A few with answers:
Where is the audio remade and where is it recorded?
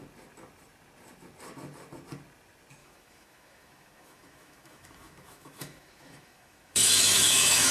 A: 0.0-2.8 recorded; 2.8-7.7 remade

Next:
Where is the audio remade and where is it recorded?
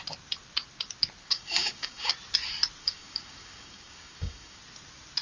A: 0.0-1.2 recorded; 1.2-2.1 remade; 2.1-2.8 recorded; 2.8-4.6 remade; 4.6-5.2 recorded